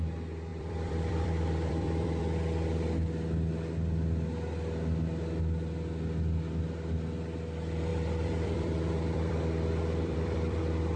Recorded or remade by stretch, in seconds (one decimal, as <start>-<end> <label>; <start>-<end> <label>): 0.0-0.5 recorded; 0.5-2.2 remade; 2.2-7.9 recorded; 7.9-10.6 remade; 10.6-11.0 recorded